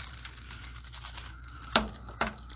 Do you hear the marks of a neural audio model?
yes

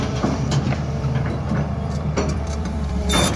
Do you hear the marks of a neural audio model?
yes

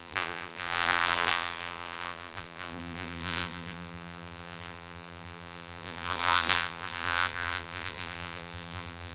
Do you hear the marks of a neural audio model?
yes